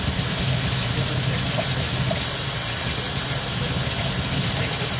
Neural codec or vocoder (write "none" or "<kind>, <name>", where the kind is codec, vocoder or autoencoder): none